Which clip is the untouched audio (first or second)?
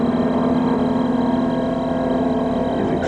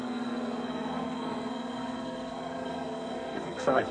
first